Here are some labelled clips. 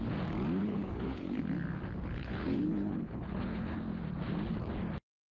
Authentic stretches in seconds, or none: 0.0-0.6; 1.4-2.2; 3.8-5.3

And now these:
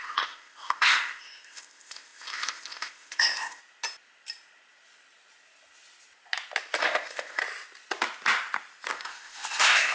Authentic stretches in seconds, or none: 3.6-6.8; 7.4-8.9

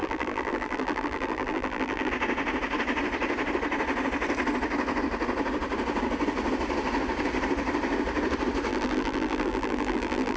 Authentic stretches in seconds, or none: 2.1-8.7

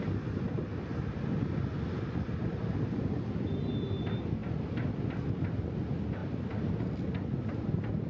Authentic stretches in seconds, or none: 0.0-8.1

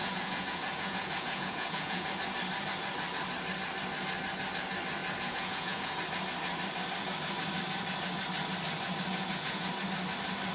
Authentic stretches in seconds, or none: 2.1-5.0; 6.0-9.1; 9.7-10.5

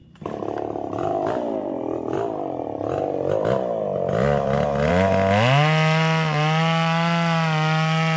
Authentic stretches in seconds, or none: 0.0-8.2

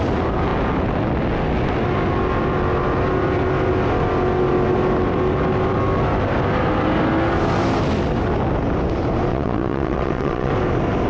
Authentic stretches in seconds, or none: 0.0-9.3; 10.5-11.1